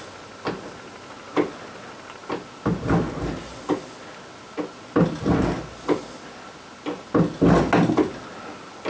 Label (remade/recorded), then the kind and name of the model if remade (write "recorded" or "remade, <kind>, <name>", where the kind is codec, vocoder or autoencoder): recorded